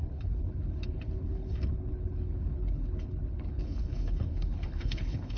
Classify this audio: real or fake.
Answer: fake